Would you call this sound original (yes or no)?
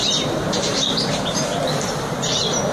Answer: no